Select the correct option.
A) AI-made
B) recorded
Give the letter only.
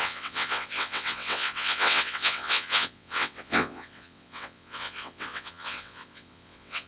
A